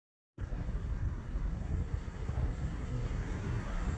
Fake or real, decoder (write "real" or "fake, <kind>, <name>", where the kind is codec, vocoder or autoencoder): fake, codec, SNAC